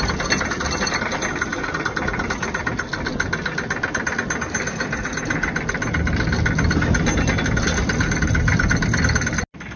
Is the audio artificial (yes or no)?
no